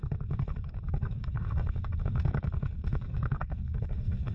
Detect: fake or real fake